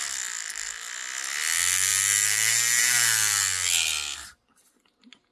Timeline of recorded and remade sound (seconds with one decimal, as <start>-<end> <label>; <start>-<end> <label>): 0.0-5.3 recorded